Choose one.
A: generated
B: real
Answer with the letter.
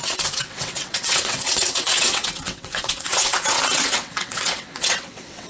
A